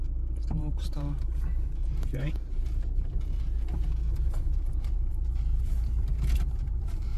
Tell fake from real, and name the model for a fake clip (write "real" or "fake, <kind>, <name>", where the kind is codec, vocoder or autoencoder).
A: fake, vocoder, BigVGAN v2